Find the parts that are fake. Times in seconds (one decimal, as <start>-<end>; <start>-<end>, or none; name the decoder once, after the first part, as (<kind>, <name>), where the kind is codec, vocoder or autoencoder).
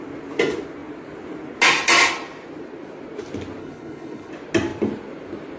3.6-4.3 (codec, HILCodec)